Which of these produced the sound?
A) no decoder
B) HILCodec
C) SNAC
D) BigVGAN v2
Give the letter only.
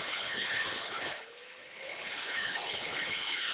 B